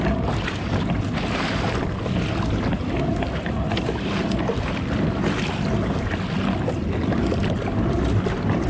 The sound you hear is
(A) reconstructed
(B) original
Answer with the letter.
B